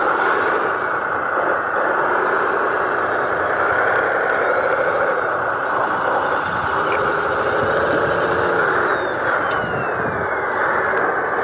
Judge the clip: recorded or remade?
recorded